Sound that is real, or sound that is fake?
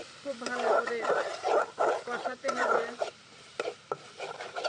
fake